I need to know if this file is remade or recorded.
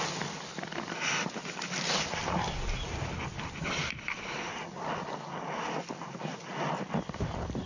recorded